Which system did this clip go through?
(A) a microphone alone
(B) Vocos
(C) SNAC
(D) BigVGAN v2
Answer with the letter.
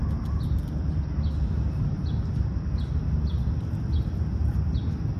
A